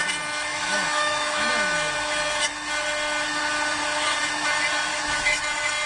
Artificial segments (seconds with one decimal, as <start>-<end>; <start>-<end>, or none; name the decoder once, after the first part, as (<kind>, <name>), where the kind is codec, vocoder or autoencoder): 0.5-1.5 (autoencoder, DAC-VAE); 4.9-5.4